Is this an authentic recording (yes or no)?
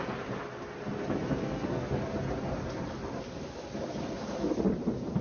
yes